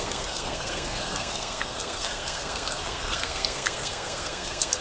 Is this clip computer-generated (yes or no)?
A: yes